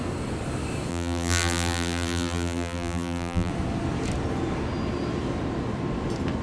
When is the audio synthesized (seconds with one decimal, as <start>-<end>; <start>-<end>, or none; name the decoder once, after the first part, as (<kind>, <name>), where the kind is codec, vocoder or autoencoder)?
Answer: 0.9-3.5 (vocoder, BigVGAN v2)